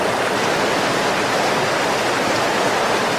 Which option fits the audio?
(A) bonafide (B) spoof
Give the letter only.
A